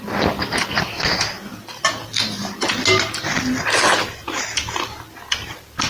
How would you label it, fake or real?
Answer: real